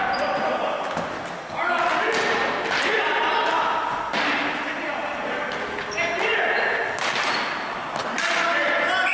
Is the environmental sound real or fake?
real